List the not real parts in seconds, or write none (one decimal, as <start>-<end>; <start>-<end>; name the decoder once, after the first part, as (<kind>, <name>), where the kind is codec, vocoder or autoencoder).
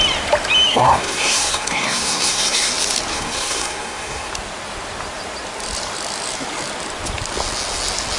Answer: 0.7-2.7 (codec, SNAC); 3.1-4.3